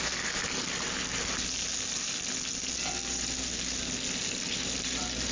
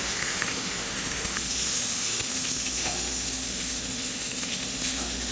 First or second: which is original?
first